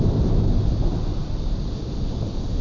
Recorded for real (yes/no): yes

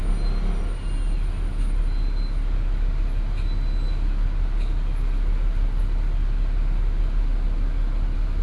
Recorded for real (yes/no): yes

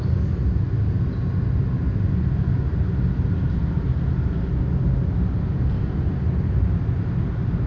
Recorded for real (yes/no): yes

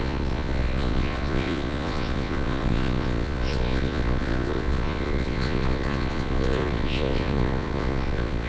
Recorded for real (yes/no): no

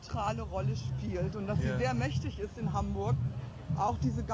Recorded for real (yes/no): yes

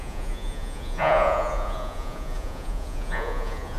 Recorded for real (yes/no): no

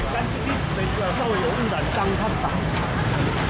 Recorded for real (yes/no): yes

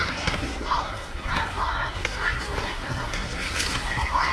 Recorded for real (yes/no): no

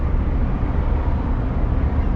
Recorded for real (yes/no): yes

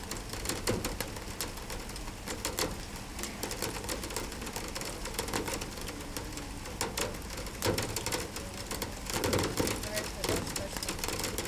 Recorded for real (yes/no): yes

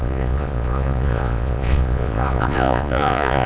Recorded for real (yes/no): no